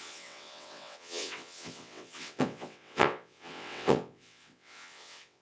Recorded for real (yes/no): no